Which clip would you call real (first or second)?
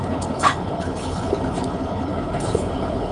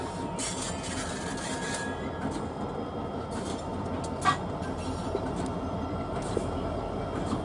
second